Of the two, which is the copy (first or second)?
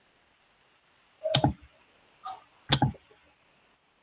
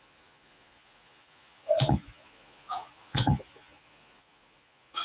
second